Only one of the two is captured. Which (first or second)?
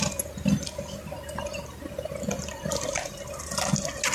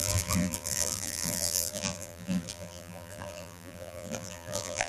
first